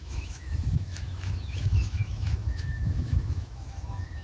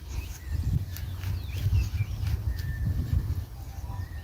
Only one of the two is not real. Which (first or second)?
first